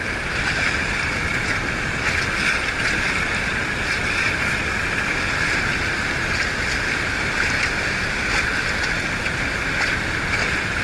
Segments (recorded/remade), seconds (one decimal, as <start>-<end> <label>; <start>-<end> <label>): 0.0-10.8 recorded